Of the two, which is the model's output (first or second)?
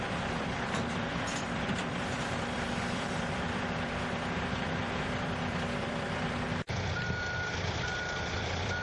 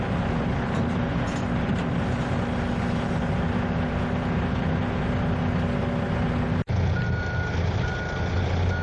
first